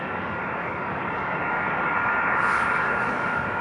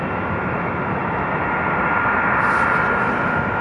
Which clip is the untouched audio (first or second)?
second